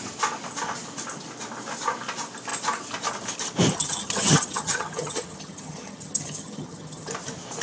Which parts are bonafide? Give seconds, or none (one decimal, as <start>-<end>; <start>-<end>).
0.0-3.8; 7.1-7.6